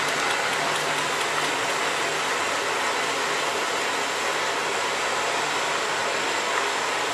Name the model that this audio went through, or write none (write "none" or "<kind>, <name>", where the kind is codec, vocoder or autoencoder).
none